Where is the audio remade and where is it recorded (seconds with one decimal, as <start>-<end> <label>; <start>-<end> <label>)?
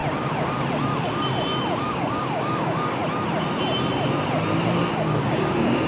0.0-1.8 recorded; 1.8-3.0 remade; 3.0-4.8 recorded; 4.8-5.9 remade